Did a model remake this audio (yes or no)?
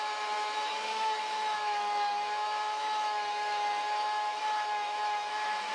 yes